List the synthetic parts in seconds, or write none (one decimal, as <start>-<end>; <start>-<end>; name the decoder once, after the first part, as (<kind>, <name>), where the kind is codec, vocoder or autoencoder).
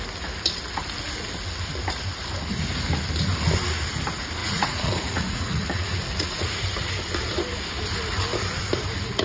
4.4-6.6 (vocoder, Vocos)